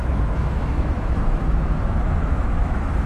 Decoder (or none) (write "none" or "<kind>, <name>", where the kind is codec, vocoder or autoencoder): autoencoder, DAC-VAE